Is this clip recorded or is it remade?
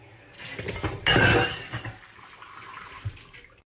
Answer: recorded